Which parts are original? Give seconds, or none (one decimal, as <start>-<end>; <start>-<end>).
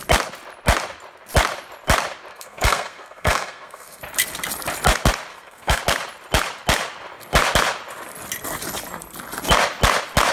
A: 0.0-2.3; 4.0-5.3; 5.8-10.3